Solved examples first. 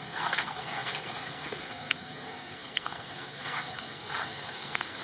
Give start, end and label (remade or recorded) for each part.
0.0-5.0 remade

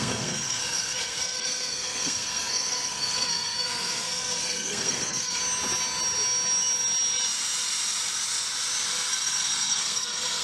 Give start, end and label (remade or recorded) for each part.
0.0-5.4 remade; 5.4-9.1 recorded; 9.1-10.4 remade

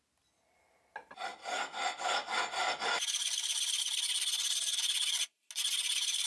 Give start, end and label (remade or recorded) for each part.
0.0-6.3 recorded

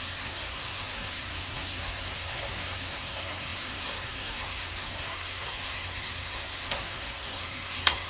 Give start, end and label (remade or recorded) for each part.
0.0-8.1 remade